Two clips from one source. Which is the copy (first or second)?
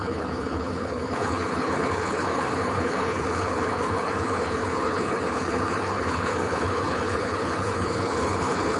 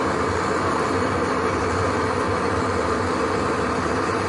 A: first